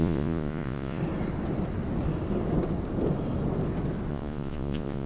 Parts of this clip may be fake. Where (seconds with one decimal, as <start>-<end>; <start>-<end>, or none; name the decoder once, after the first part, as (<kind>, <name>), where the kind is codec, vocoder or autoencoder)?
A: 0.0-1.0 (vocoder, Vocos); 4.1-5.1